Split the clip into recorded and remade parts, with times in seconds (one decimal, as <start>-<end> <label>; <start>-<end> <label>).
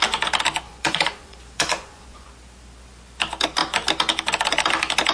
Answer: 0.0-0.7 recorded; 0.7-2.3 remade; 2.3-5.1 recorded